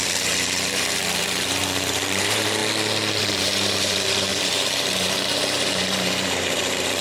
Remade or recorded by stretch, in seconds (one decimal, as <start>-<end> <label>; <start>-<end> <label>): 0.0-2.6 remade; 2.6-3.2 recorded; 3.2-7.0 remade